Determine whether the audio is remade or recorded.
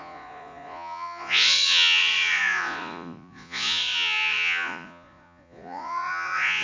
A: remade